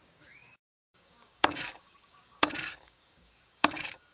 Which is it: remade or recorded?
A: remade